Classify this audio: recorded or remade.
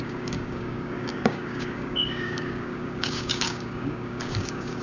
remade